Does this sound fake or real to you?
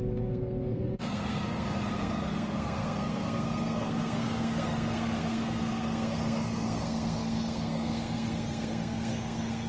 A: fake